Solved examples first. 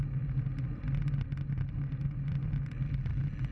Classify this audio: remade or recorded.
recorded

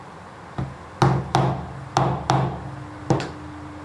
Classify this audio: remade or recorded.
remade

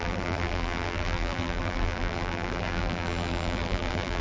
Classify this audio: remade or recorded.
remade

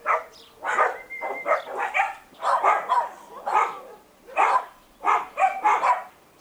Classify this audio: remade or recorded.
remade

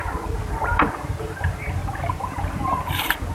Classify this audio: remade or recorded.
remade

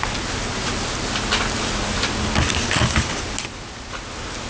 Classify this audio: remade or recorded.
recorded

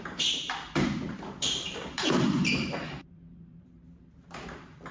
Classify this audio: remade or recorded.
remade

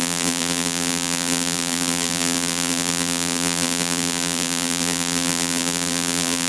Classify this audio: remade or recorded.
remade